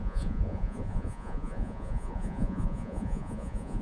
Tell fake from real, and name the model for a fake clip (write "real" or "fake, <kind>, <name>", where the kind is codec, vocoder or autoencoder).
fake, vocoder, Vocos